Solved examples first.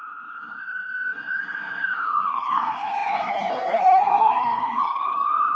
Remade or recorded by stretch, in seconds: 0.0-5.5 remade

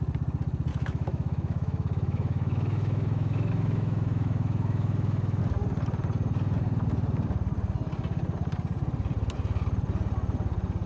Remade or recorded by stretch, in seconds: 0.0-0.7 recorded; 0.7-5.4 remade; 5.4-10.9 recorded

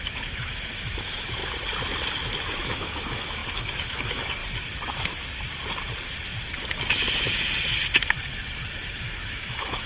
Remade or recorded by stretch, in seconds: 0.0-1.4 remade; 1.4-2.6 recorded; 2.6-4.4 remade; 4.4-9.0 recorded; 9.0-9.9 remade

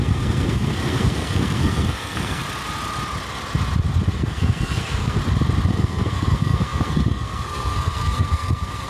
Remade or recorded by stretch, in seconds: 0.0-2.4 remade; 2.4-4.1 recorded; 4.1-5.2 remade; 5.2-5.7 recorded; 5.7-8.9 remade